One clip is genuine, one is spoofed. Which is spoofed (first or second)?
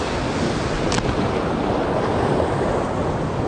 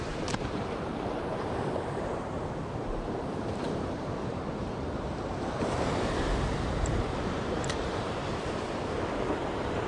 second